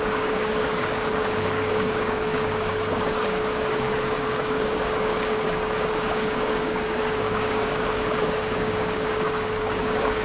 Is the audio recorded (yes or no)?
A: no